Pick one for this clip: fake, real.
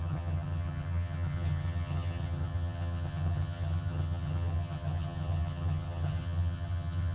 fake